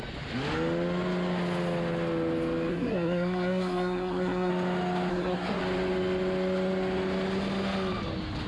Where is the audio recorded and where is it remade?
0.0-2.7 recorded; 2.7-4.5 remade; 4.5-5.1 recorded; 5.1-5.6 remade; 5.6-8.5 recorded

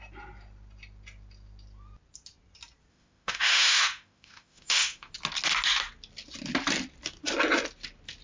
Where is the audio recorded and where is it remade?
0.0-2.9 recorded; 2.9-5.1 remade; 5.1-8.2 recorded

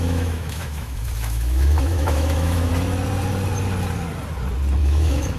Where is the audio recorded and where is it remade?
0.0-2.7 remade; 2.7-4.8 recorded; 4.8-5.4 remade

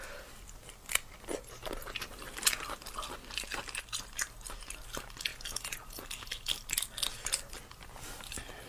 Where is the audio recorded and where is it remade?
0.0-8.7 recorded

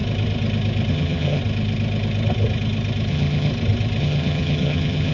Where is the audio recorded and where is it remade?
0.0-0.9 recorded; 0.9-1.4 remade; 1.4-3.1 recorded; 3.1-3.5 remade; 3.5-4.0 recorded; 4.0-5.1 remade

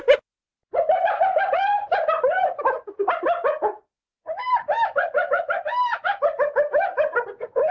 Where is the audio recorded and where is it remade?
0.0-7.7 recorded

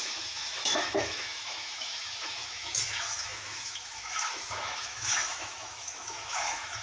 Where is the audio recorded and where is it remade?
0.0-6.8 remade

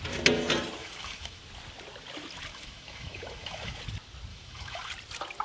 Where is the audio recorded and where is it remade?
0.0-0.8 recorded; 0.8-1.4 remade; 1.4-2.5 recorded; 2.5-3.8 remade; 3.8-4.3 recorded; 4.3-4.9 remade; 4.9-5.4 recorded